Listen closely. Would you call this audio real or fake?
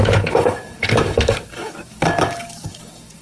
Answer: fake